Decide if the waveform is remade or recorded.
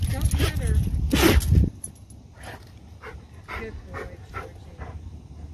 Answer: recorded